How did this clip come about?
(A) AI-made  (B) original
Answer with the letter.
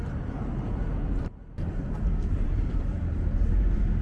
A